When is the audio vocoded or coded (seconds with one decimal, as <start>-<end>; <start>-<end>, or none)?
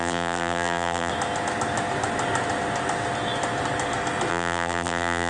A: 0.0-1.1; 4.3-5.3